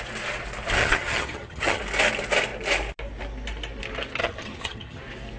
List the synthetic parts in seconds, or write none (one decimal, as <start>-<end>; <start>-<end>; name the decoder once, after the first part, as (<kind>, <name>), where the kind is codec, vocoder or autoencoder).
0.8-1.8 (vocoder, HiFi-GAN); 4.2-5.0